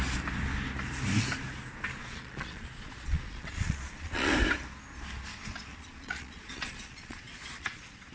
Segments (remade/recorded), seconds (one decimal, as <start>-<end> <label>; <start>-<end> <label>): 0.0-2.0 recorded; 2.0-4.3 remade; 4.3-5.7 recorded; 5.7-8.1 remade